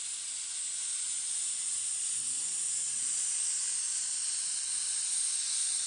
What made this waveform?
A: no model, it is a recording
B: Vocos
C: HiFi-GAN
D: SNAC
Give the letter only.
A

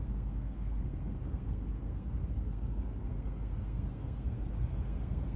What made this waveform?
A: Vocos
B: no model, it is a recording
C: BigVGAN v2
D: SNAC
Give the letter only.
D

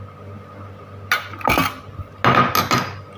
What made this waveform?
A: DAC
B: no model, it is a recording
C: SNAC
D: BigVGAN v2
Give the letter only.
B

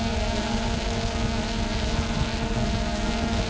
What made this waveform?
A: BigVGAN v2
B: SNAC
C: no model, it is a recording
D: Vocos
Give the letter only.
B